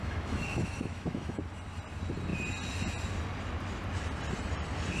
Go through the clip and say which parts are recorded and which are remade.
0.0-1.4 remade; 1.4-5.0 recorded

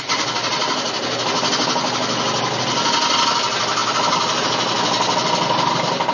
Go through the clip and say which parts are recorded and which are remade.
0.0-6.1 recorded

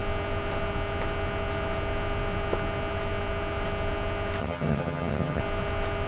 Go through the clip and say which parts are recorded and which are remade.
0.0-4.4 recorded; 4.4-5.4 remade; 5.4-6.1 recorded

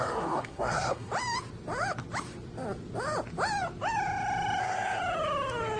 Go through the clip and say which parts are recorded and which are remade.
0.0-1.1 remade; 1.1-4.6 recorded; 4.6-5.0 remade; 5.0-5.8 recorded

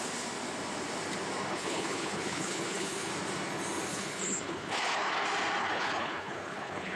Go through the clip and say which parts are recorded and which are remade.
0.0-1.5 recorded; 1.5-3.1 remade; 3.1-3.9 recorded; 3.9-5.1 remade; 5.1-5.6 recorded; 5.6-7.0 remade

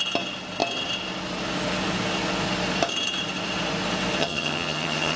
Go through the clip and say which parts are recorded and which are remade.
0.0-4.2 recorded; 4.2-5.2 remade

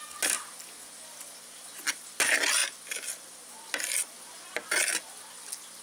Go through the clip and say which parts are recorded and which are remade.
0.0-5.8 recorded